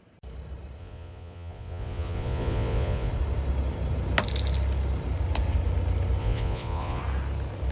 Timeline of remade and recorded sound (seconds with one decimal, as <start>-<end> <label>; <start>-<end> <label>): 0.0-0.8 recorded; 0.8-3.1 remade; 3.1-6.2 recorded; 6.2-7.0 remade; 7.0-7.7 recorded